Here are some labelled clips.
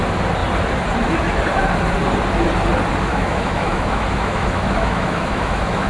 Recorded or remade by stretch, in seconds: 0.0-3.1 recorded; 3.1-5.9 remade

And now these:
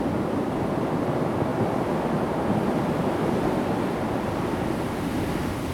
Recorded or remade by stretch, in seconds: 0.0-5.7 recorded